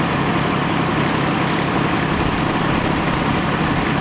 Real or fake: fake